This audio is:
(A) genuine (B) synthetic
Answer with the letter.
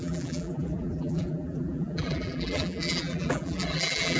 B